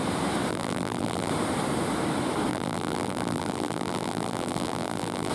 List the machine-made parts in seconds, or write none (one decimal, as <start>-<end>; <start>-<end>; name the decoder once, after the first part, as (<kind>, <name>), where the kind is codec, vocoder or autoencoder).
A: 0.5-1.3 (vocoder, BigVGAN v2); 2.5-5.3